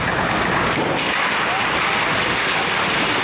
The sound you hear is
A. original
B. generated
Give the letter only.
A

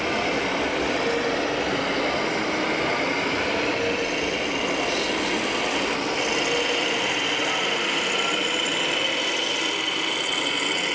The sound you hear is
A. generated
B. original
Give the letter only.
B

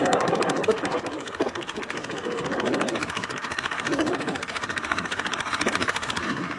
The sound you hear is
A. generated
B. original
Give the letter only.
A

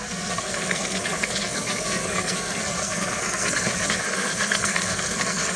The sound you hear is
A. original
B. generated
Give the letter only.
B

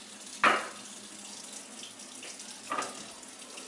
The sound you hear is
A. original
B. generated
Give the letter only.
A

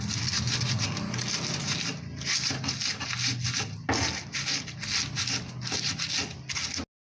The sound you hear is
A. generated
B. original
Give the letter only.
B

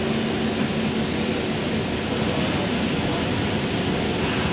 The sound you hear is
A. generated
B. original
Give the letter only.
B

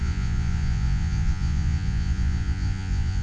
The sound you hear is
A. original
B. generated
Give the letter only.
B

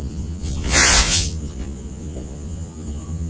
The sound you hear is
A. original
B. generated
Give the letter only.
B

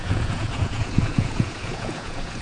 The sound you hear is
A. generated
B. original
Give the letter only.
A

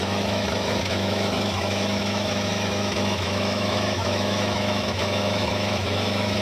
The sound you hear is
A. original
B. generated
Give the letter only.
B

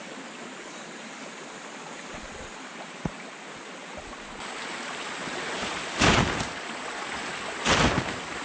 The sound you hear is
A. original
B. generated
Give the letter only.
A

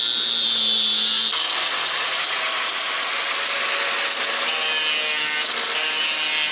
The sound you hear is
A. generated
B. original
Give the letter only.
B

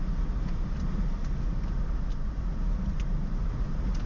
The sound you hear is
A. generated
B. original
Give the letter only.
B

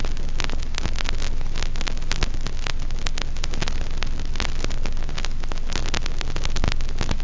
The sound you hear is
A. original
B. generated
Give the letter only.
A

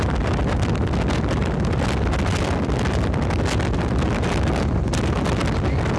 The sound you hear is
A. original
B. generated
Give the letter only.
A